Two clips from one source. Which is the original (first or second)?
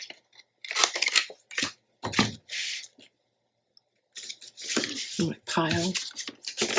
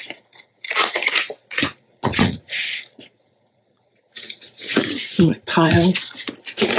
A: first